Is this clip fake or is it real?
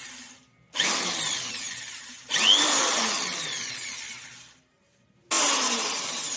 real